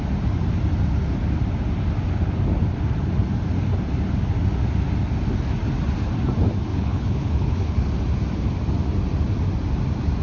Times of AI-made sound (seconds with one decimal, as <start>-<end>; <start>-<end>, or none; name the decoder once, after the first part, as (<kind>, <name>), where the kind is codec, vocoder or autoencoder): 6.7-7.9 (codec, HILCodec)